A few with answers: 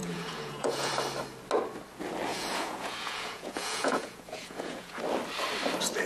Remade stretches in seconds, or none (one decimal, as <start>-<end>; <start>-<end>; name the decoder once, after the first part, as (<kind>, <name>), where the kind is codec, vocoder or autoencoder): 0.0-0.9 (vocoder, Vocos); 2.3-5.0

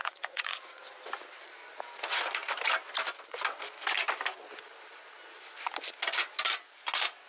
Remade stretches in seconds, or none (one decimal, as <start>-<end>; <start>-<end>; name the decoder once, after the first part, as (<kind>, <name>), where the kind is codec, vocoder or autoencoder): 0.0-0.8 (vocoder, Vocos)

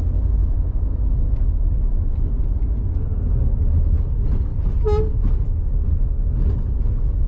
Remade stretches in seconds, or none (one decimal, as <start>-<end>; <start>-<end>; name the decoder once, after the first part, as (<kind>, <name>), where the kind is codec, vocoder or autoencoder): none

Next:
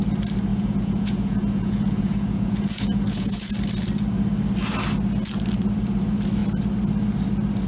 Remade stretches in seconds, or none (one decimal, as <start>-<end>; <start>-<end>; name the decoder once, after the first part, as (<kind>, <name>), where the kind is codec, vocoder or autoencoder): 0.5-3.5 (vocoder, Vocos)

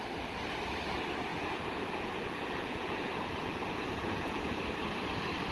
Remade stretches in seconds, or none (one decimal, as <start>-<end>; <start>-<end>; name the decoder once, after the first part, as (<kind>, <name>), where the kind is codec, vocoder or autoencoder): 1.3-4.6 (vocoder, Vocos)

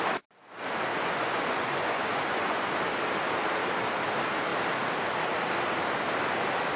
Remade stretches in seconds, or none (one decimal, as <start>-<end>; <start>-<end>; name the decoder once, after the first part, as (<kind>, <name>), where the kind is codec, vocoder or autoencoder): 0.9-2.7 (vocoder, Vocos)

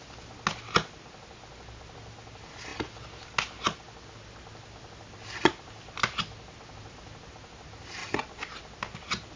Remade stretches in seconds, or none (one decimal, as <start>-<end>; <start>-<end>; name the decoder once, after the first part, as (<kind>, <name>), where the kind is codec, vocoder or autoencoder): none